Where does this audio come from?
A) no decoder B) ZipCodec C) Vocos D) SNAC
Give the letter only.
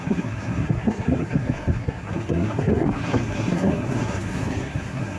D